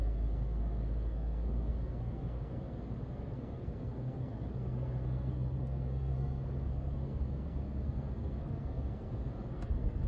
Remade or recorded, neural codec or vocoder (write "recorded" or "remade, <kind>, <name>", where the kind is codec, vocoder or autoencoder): remade, codec, SNAC